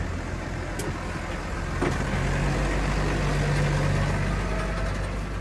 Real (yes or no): yes